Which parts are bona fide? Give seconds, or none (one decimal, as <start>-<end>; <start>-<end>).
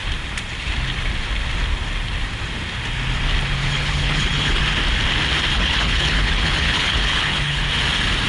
0.0-3.6; 4.6-5.5; 7.6-8.3